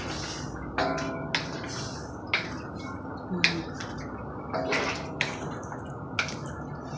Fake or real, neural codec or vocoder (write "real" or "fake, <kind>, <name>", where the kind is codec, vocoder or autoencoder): real